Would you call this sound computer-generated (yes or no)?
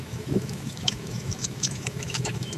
yes